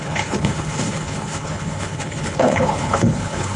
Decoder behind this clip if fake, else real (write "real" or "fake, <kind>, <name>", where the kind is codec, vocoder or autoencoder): fake, codec, HILCodec